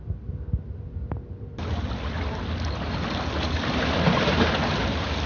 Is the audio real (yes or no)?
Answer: yes